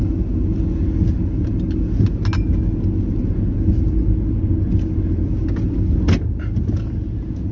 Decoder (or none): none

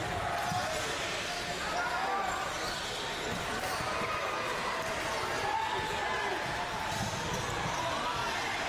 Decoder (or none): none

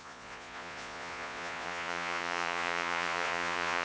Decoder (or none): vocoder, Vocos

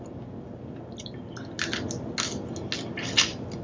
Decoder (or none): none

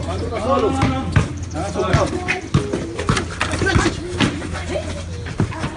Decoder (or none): none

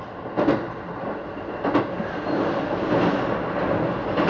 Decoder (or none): none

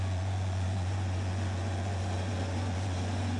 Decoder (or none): vocoder, Vocos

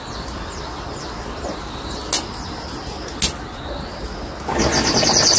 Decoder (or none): none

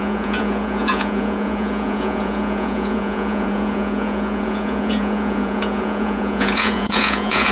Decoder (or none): vocoder, Vocos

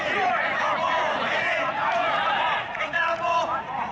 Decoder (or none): vocoder, Vocos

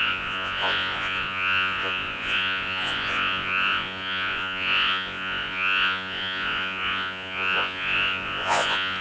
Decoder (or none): vocoder, Vocos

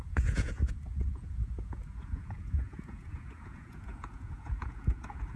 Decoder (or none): vocoder, Vocos